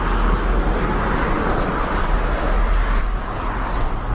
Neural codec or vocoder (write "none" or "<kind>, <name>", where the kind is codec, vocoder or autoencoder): none